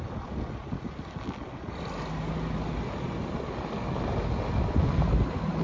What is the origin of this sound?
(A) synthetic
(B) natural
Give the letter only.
B